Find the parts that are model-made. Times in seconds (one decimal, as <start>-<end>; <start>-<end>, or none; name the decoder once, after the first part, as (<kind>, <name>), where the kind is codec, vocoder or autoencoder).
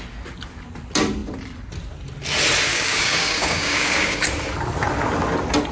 2.7-4.2 (codec, DAC)